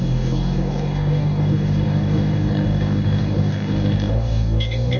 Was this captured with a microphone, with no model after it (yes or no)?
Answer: no